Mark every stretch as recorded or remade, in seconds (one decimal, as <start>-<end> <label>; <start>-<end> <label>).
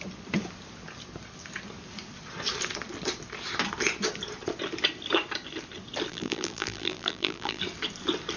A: 0.0-6.1 recorded; 6.1-7.6 remade; 7.6-8.4 recorded